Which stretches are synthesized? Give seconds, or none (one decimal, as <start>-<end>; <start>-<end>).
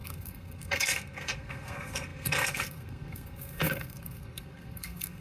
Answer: 0.0-5.2